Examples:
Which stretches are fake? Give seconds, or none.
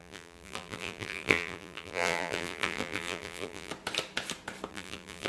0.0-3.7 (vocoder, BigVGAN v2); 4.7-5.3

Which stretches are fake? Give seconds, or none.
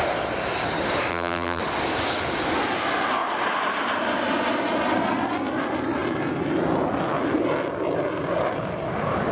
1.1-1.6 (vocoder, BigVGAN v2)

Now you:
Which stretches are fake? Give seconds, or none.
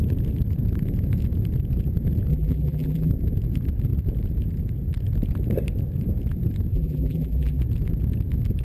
2.3-3.1 (vocoder, BigVGAN v2); 6.7-7.6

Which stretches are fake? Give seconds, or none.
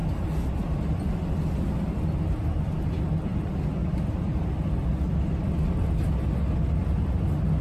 0.0-1.5 (vocoder, BigVGAN v2)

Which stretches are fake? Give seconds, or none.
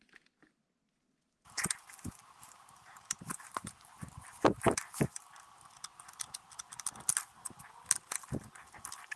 0.8-5.2 (vocoder, BigVGAN v2)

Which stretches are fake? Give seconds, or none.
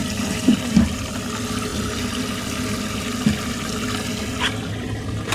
0.0-0.9 (vocoder, BigVGAN v2)